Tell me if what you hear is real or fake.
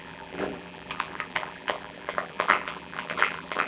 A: fake